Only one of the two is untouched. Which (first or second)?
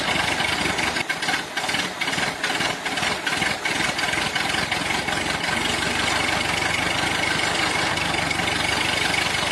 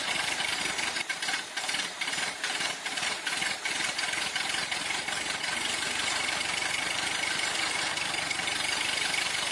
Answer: first